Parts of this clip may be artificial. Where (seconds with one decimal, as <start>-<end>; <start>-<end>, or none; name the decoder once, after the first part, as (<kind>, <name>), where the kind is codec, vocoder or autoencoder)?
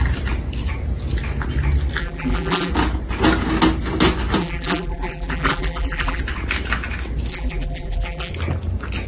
2.0-2.7 (vocoder, BigVGAN v2); 4.4-6.2; 7.3-8.3